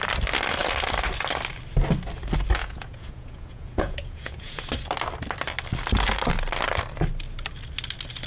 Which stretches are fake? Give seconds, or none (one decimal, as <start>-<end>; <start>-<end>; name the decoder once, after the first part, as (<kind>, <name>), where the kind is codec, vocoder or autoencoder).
2.6-4.7 (vocoder, Vocos)